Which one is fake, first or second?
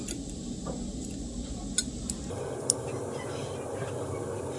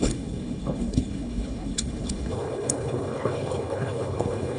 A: second